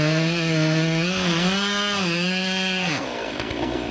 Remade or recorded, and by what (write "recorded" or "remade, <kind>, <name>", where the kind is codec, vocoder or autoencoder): remade, codec, SNAC